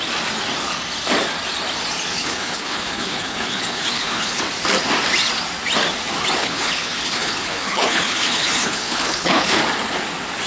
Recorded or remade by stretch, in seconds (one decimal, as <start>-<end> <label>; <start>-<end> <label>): 0.0-2.1 recorded; 2.1-4.4 remade; 4.4-6.4 recorded; 6.4-9.6 remade; 9.6-10.5 recorded